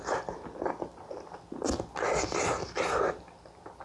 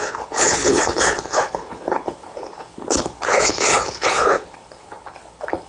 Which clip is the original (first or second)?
first